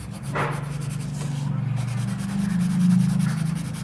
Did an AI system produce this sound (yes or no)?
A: no